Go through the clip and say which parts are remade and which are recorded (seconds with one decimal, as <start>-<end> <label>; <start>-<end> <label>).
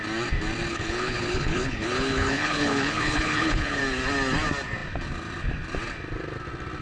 0.0-0.7 recorded; 0.7-3.8 remade; 3.8-6.8 recorded